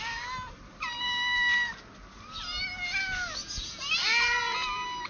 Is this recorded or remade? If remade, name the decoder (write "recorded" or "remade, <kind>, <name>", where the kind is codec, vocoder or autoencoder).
recorded